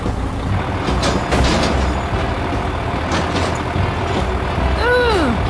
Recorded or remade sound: recorded